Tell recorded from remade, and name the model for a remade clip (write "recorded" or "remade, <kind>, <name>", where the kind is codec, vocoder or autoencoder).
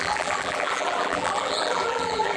remade, vocoder, BigVGAN v2